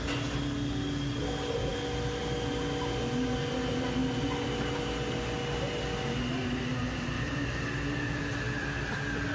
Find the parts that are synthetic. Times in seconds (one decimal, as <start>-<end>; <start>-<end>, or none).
6.7-8.2